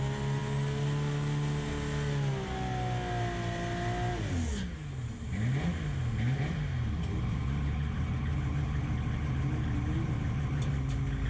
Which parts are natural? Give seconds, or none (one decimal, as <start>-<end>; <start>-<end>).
0.0-11.3